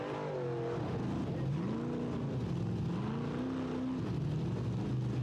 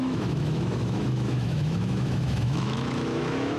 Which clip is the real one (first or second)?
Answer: first